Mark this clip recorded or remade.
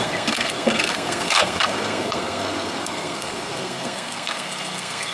remade